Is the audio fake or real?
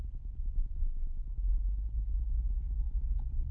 real